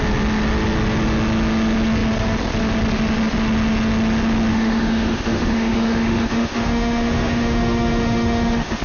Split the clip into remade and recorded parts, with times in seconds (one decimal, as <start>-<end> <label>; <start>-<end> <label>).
0.0-4.5 recorded; 4.5-8.8 remade